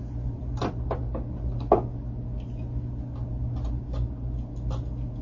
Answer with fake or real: real